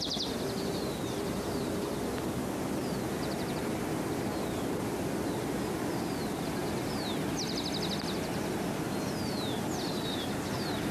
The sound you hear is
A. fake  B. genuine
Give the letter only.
B